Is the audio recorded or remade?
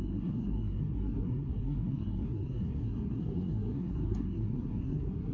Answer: remade